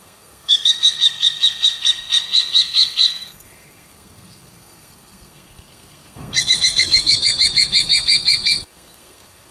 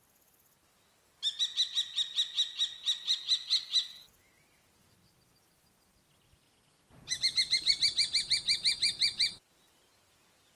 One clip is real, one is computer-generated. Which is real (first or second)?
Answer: second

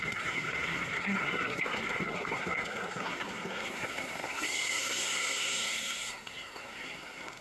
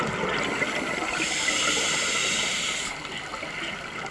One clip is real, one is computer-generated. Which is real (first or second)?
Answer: second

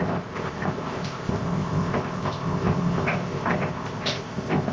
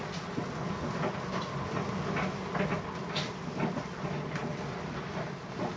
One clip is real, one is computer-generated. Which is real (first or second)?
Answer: second